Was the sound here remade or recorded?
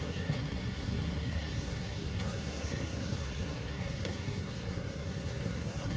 remade